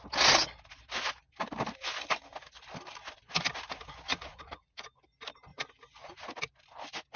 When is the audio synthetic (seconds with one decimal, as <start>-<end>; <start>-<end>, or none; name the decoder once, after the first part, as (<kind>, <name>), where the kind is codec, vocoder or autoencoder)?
4.1-4.8 (vocoder, Vocos); 5.5-6.3

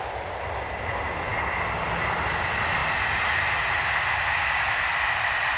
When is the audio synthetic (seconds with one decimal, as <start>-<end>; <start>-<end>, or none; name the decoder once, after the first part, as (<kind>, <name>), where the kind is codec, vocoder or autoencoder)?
none

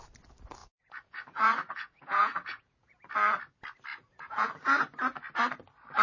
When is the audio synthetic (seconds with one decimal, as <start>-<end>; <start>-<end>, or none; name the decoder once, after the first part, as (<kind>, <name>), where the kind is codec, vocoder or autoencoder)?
0.6-3.1 (vocoder, Vocos); 3.9-4.5

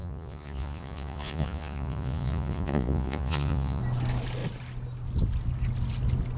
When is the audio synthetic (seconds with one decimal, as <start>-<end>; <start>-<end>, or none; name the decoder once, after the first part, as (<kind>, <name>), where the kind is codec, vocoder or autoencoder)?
0.0-3.8 (vocoder, Vocos)

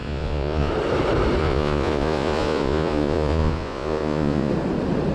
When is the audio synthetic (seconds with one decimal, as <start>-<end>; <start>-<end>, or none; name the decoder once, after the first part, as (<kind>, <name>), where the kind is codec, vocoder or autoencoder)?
0.0-0.7 (vocoder, Vocos); 1.4-4.5

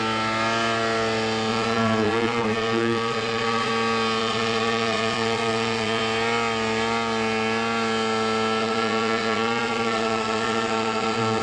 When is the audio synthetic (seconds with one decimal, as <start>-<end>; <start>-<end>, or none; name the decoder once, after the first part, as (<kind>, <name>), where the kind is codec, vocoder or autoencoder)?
1.5-3.7 (vocoder, Vocos); 4.2-6.0; 8.6-11.4

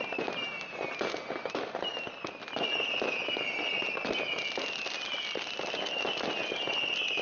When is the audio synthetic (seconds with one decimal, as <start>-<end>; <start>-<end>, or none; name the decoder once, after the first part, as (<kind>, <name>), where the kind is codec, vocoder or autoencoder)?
none

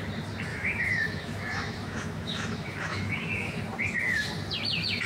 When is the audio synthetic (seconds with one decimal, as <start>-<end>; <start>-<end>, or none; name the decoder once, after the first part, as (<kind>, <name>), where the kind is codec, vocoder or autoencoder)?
0.5-3.6 (autoencoder, DAC-VAE)